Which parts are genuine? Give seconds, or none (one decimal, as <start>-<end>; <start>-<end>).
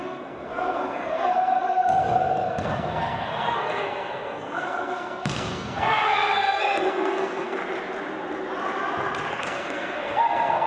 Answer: 7.6-9.3